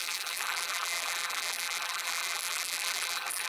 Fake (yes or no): yes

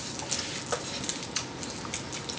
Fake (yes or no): no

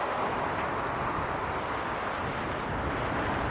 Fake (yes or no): no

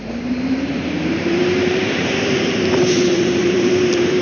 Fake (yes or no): yes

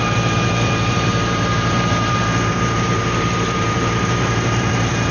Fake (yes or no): yes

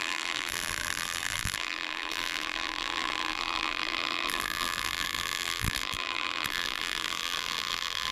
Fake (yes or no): yes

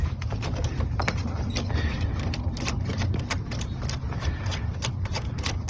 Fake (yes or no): yes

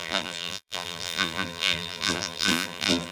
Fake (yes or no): yes